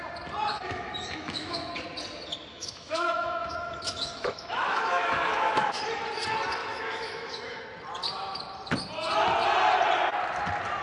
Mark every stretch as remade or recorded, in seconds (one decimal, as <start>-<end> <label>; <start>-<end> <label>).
0.0-0.5 recorded; 0.5-1.7 remade; 1.7-2.5 recorded; 2.5-5.8 remade; 5.8-6.6 recorded; 6.6-7.6 remade; 7.6-10.8 recorded